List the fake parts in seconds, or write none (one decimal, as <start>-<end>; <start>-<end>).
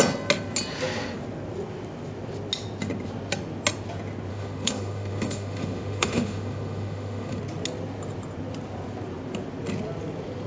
4.3-7.4